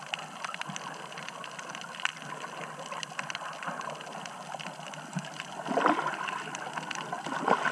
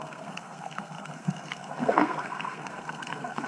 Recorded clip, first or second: first